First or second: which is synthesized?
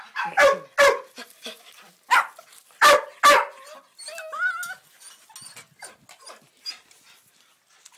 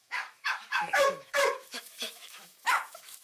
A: second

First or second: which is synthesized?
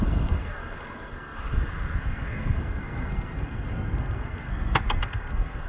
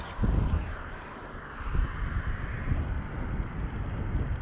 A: first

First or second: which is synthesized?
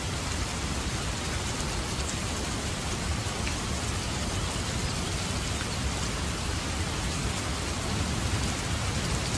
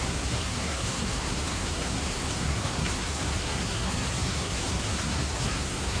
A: second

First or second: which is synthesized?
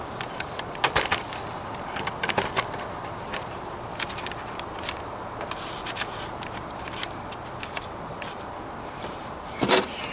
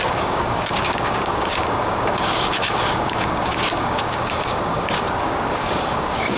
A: second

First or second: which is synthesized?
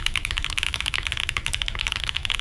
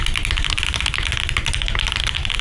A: first